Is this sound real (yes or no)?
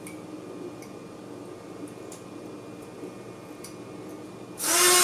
yes